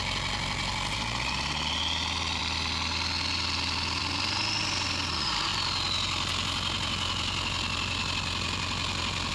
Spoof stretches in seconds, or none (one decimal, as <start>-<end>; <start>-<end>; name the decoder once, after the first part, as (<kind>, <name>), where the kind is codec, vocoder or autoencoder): none